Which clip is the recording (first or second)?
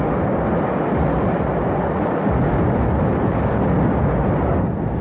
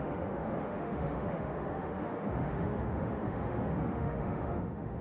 first